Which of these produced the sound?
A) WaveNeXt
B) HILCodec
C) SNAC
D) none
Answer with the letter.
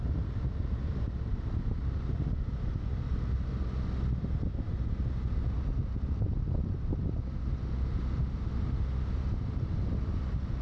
D